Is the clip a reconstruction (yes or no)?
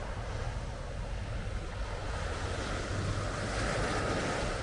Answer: no